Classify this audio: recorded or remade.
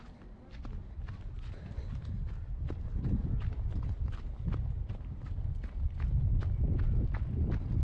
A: recorded